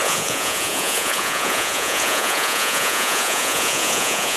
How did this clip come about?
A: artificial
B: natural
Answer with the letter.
A